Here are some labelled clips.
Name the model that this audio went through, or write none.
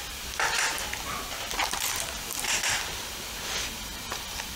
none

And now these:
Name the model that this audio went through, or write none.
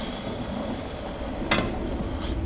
none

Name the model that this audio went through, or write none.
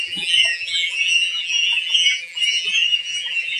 vocoder, BigVGAN v2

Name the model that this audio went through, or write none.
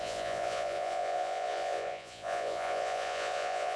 vocoder, Vocos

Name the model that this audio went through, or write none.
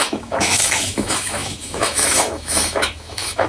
autoencoder, DAC-VAE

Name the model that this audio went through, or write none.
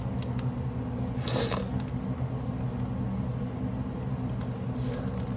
none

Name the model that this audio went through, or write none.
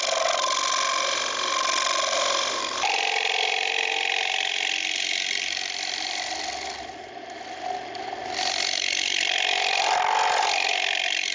none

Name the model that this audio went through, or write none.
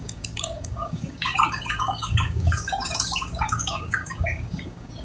codec, DAC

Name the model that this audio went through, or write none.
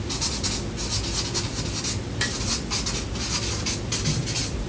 none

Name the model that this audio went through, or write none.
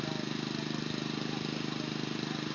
none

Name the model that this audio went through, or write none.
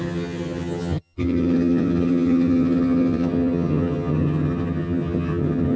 vocoder, HiFi-GAN